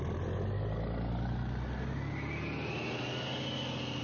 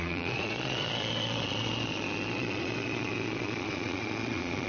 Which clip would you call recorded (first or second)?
first